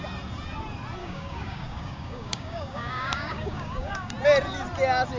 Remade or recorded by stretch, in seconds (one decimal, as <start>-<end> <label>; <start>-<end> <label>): 0.0-1.0 recorded; 1.0-4.1 remade; 4.1-5.2 recorded